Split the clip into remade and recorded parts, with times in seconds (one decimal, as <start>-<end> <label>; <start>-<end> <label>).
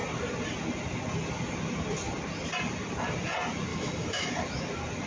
0.0-3.7 recorded; 3.7-4.3 remade; 4.3-5.1 recorded